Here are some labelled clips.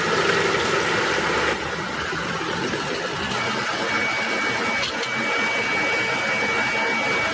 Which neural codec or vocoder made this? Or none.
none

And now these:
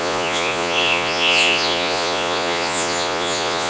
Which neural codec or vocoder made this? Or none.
vocoder, Vocos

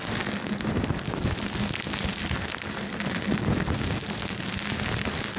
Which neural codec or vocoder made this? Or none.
none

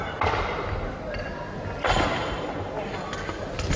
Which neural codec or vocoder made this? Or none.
none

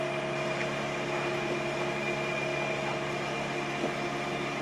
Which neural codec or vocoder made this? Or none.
none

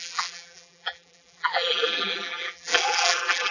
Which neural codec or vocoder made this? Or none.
vocoder, BigVGAN v2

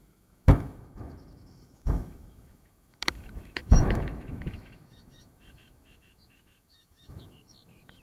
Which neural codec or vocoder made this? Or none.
autoencoder, DAC-VAE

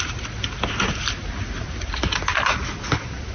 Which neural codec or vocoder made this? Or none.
none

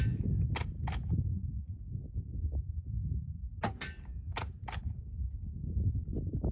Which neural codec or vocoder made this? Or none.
none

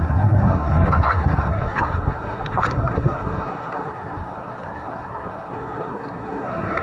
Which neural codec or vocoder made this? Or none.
codec, SNAC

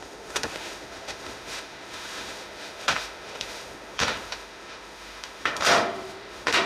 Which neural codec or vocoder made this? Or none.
autoencoder, DAC-VAE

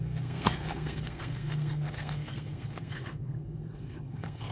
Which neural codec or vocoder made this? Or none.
codec, SNAC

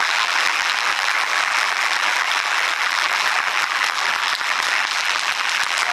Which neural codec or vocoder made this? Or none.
vocoder, BigVGAN v2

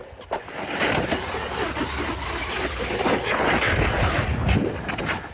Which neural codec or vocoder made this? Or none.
none